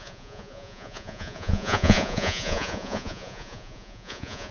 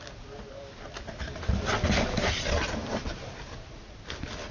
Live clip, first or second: second